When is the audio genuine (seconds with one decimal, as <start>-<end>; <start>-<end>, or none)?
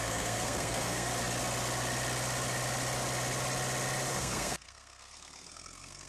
1.1-4.1